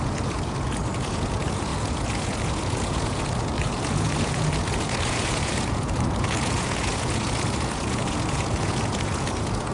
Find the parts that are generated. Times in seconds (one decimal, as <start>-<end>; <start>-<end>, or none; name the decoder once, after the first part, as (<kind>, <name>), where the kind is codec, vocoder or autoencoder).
0.0-9.7 (vocoder, Vocos)